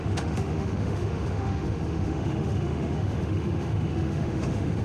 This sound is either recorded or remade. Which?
remade